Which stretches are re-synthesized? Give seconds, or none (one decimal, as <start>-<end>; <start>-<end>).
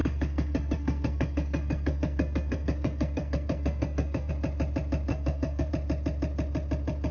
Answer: 0.0-4.3; 5.1-5.7